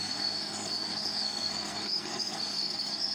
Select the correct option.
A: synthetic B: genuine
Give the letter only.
A